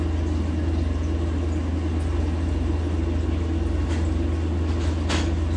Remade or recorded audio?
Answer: recorded